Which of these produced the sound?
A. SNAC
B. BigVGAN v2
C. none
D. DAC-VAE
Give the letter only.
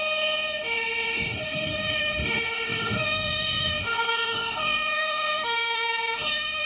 D